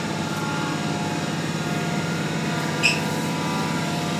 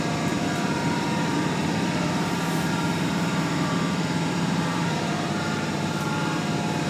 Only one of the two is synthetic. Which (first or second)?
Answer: second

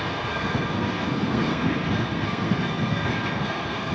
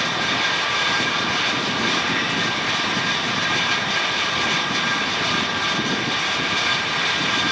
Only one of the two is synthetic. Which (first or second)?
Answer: first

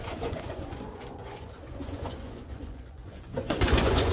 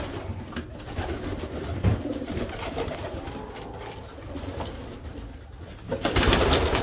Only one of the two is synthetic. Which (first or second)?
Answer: first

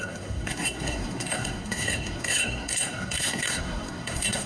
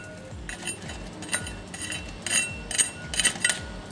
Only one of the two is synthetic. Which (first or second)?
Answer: first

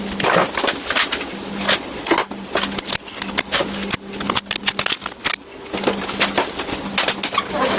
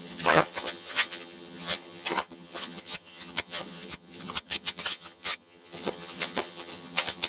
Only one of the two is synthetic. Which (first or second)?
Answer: second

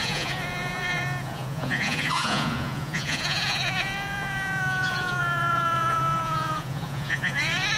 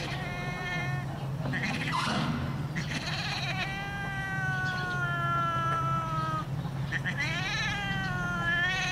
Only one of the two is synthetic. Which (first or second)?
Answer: first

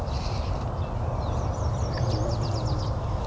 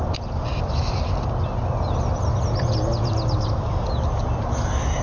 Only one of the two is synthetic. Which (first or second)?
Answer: first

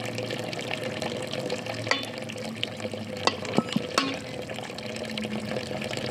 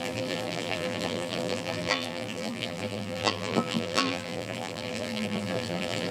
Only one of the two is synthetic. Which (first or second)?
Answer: second